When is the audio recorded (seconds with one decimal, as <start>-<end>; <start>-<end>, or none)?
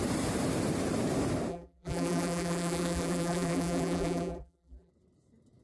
0.0-1.5; 4.9-5.6